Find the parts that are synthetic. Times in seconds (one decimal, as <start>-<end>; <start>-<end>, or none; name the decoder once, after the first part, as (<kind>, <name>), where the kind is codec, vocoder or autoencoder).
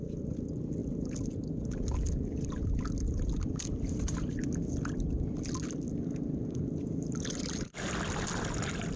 none